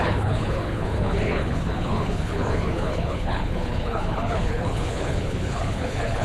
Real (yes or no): no